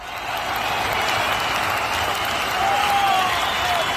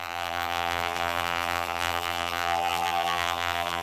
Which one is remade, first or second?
second